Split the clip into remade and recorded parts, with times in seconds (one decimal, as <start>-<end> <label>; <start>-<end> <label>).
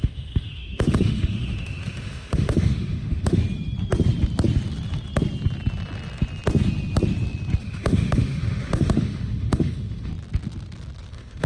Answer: 0.0-3.4 remade; 3.4-7.6 recorded; 7.6-10.1 remade; 10.1-11.1 recorded; 11.1-11.5 remade